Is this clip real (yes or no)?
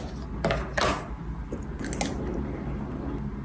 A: yes